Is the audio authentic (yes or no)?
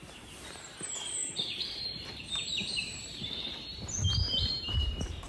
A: no